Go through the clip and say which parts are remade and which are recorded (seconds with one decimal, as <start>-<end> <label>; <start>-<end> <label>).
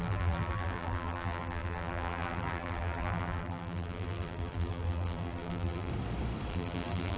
0.0-5.9 remade; 5.9-6.5 recorded; 6.5-7.2 remade